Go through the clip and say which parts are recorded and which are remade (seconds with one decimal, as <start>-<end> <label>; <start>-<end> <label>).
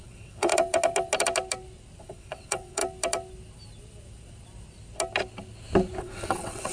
0.0-0.5 remade; 0.5-2.0 recorded; 2.0-2.8 remade; 2.8-6.0 recorded; 6.0-6.7 remade